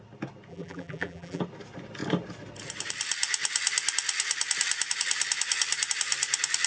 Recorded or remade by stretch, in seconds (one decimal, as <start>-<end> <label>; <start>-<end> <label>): 0.0-0.5 recorded; 0.5-1.4 remade; 1.4-6.7 recorded